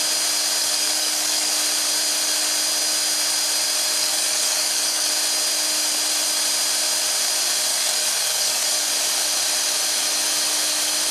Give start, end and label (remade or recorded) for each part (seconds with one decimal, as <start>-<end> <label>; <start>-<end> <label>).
0.0-0.6 recorded; 0.6-1.5 remade; 1.5-4.0 recorded; 4.0-5.1 remade; 5.1-7.7 recorded; 7.7-8.9 remade; 8.9-11.1 recorded